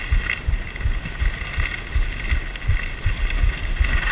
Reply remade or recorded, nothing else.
recorded